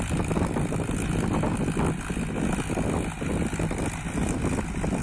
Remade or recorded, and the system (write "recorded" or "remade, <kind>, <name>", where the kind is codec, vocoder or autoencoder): recorded